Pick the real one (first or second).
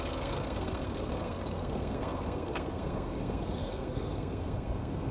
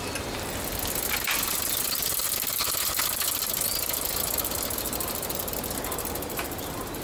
second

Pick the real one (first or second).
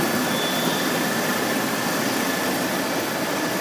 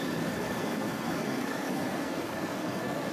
first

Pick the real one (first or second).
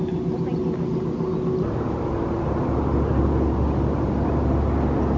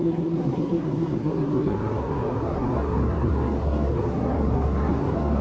first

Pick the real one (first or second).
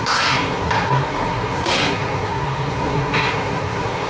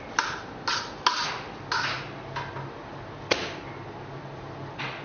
second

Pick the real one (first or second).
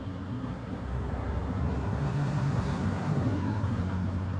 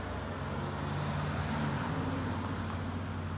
second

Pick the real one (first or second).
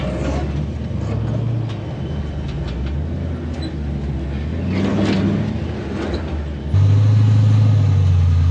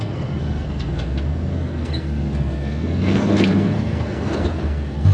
first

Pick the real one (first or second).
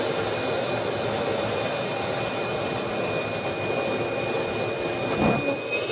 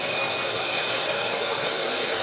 first